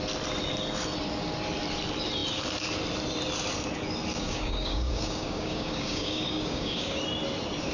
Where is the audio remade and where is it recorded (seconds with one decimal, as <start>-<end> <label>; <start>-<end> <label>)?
0.0-4.1 recorded; 4.1-7.0 remade; 7.0-7.7 recorded